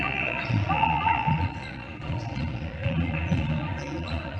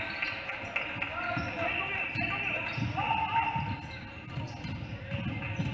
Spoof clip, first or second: first